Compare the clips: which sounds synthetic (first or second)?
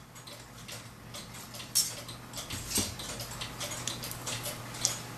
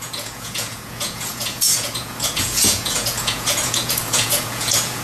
second